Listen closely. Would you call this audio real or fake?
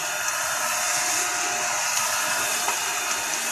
real